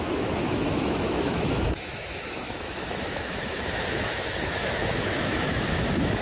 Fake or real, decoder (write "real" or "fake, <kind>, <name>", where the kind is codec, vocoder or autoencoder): fake, autoencoder, DAC-VAE